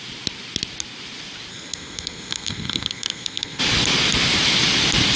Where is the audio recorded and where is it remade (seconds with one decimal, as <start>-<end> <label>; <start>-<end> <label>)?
0.0-1.5 recorded; 1.5-3.6 remade; 3.6-5.2 recorded